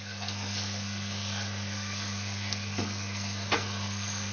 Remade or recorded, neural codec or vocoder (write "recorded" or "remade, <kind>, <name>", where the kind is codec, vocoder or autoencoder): remade, codec, SNAC